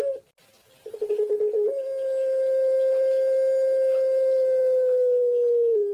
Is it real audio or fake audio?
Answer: real